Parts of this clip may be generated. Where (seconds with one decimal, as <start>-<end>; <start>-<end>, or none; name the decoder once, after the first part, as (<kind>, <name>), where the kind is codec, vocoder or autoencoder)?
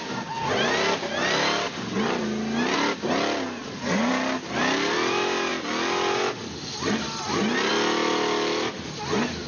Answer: none